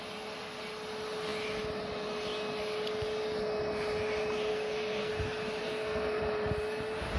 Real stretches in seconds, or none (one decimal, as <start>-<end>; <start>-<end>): 0.0-4.5; 5.1-5.6; 6.2-7.2